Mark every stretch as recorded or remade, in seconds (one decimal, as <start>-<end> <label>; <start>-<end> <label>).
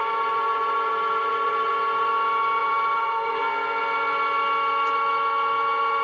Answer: 0.0-1.7 remade; 1.7-2.6 recorded; 2.6-3.4 remade; 3.4-6.0 recorded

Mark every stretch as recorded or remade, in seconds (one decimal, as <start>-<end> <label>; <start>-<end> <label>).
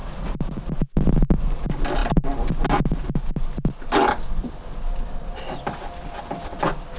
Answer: 0.0-7.0 recorded